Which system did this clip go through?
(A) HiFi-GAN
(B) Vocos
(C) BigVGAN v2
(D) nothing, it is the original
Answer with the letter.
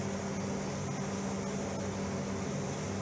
D